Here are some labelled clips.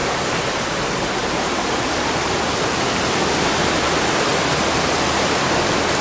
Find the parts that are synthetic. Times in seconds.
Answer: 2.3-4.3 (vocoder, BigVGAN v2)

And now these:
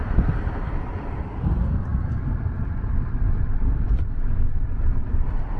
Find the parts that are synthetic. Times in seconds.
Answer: none

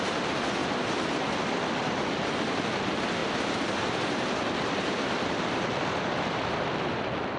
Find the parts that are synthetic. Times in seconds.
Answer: 0.6-2.2 (vocoder, BigVGAN v2); 3.2-7.0

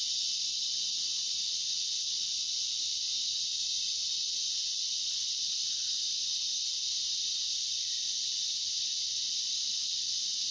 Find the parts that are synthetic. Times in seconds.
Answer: 0.0-10.5 (vocoder, BigVGAN v2)

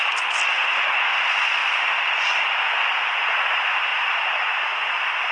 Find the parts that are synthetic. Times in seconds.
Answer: 1.6-2.5 (vocoder, BigVGAN v2)

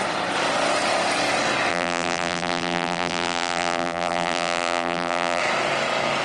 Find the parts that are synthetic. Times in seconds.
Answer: 1.7-5.4 (vocoder, BigVGAN v2)

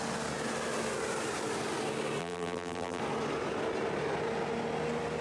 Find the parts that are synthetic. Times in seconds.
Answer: 2.2-3.0 (vocoder, BigVGAN v2)